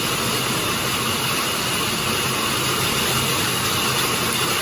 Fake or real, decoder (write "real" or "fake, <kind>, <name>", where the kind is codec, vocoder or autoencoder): real